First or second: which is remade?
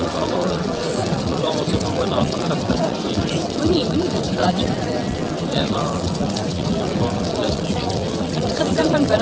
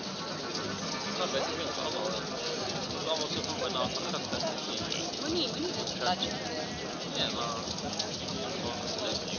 first